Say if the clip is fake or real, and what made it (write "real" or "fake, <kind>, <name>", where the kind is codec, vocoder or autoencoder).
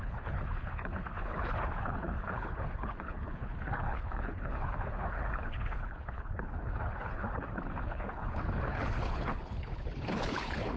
fake, codec, HILCodec